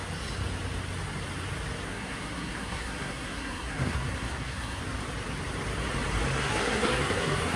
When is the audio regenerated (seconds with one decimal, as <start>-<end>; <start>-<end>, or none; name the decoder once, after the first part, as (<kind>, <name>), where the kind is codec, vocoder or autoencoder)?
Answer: 1.9-4.8 (codec, SNAC); 6.4-7.6